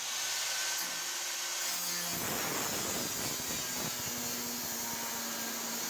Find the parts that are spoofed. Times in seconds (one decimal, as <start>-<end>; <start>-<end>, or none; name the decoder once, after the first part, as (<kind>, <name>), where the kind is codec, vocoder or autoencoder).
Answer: none